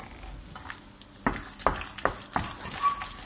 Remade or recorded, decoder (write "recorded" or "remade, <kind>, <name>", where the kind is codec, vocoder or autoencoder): recorded